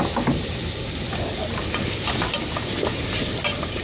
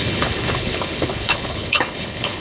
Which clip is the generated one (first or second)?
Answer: second